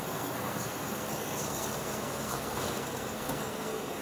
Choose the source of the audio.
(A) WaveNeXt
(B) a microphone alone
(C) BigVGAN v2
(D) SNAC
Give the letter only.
D